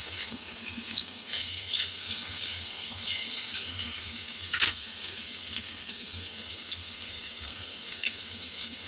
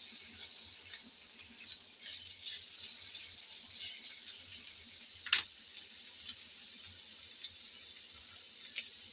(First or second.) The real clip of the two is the second